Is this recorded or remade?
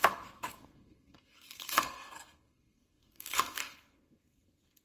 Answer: remade